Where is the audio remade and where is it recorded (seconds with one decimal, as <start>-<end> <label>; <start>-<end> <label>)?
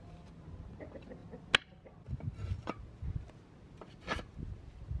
0.0-5.0 recorded